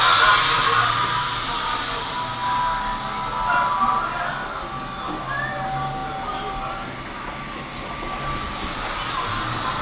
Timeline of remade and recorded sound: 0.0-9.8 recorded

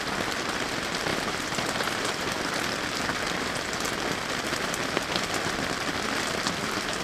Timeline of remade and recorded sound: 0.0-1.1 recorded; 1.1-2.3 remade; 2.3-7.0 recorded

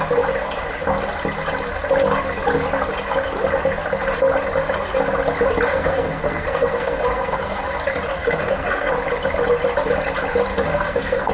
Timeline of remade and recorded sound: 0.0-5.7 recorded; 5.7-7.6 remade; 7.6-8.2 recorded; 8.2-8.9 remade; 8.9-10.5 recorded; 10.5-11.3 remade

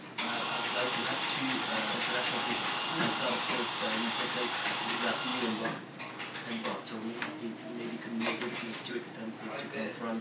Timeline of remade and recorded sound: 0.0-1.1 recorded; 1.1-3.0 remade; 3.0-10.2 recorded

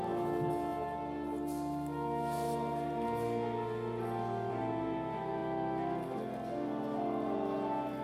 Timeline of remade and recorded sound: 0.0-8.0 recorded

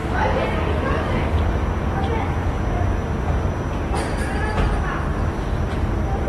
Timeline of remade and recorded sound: 0.0-1.4 remade; 1.4-6.3 recorded